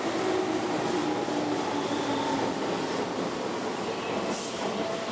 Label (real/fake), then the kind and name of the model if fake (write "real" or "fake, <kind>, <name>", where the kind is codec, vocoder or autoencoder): real